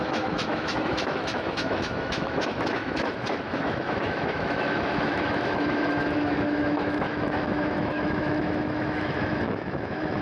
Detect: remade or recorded remade